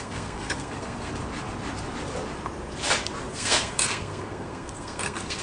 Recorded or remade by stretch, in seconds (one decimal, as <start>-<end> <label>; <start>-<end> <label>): 0.0-1.1 remade; 1.1-3.3 recorded; 3.3-5.4 remade

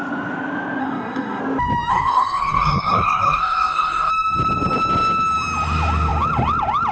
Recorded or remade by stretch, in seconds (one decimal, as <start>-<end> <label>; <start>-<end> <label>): 0.0-0.8 recorded; 0.8-1.4 remade; 1.4-1.9 recorded; 1.9-4.1 remade; 4.1-6.9 recorded

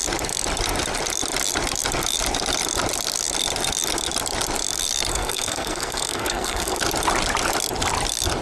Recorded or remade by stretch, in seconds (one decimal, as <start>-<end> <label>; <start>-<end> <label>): 0.0-5.1 recorded; 5.1-6.8 remade; 6.8-8.4 recorded

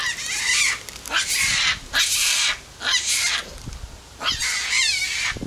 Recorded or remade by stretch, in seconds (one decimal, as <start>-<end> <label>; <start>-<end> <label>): 0.0-5.5 recorded